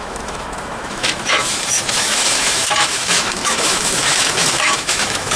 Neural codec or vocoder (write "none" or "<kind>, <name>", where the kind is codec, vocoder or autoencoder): autoencoder, DAC-VAE